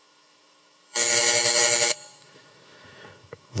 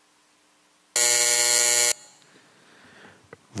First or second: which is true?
second